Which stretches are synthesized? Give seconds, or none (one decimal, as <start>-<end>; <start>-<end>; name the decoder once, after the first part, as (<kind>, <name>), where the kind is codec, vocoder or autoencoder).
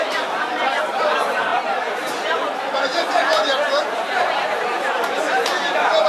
0.0-1.5 (vocoder, BigVGAN v2); 2.0-2.9; 3.9-6.1